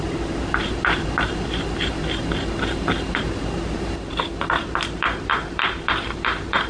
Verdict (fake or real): fake